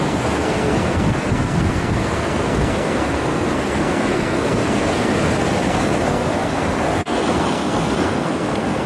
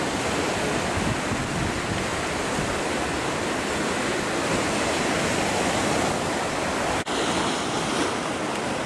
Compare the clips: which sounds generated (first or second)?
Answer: first